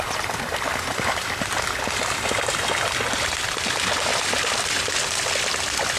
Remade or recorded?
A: recorded